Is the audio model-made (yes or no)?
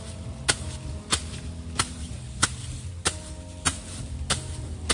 no